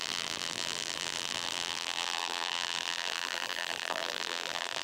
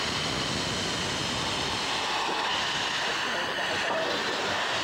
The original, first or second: second